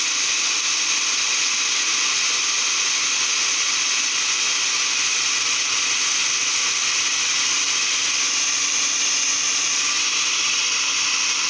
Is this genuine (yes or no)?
yes